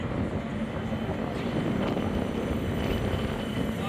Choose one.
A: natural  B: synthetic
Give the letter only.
A